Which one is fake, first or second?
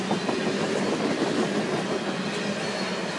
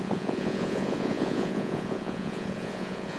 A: second